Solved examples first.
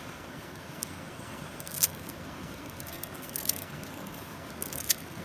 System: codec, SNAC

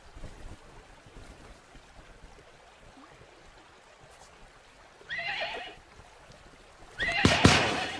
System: none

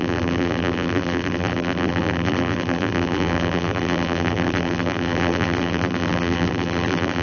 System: vocoder, BigVGAN v2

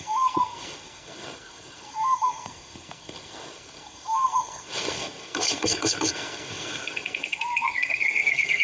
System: codec, SNAC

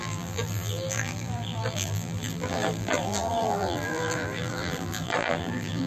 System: vocoder, BigVGAN v2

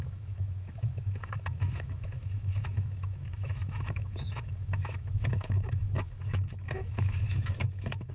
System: autoencoder, DAC-VAE